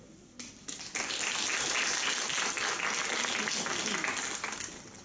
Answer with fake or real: real